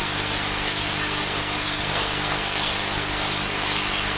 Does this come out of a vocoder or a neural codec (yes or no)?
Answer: yes